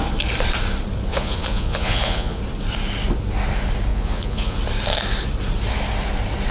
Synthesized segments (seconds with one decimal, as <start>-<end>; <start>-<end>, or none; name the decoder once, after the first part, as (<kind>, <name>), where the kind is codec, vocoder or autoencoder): 1.1-2.4 (vocoder, Vocos); 3.9-4.6